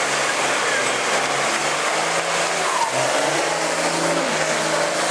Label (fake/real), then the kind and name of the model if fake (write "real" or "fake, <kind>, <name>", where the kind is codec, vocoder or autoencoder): real